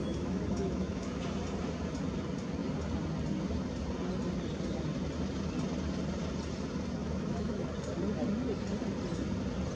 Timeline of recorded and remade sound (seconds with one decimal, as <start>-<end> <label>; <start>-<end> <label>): 0.0-1.2 remade; 1.2-7.0 recorded; 7.0-7.7 remade; 7.7-9.8 recorded